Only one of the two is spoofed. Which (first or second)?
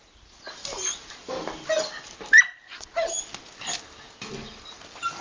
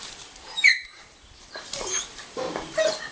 second